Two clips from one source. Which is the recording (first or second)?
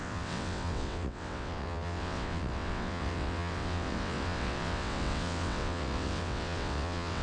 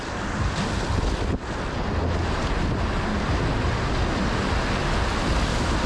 second